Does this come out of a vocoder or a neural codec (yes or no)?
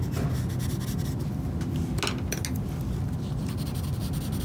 no